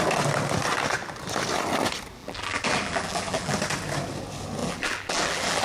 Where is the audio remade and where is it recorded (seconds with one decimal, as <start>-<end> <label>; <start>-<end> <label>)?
0.0-2.2 recorded; 2.2-3.6 remade; 3.6-4.6 recorded; 4.6-5.6 remade